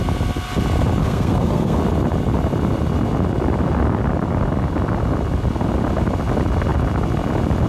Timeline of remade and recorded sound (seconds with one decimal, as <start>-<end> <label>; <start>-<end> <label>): 0.0-1.0 recorded; 1.0-1.8 remade; 1.8-7.7 recorded